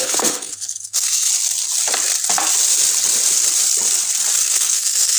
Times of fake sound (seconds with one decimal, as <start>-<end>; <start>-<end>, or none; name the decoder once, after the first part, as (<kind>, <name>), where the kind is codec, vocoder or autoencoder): 0.0-1.3 (codec, SNAC); 4.4-5.2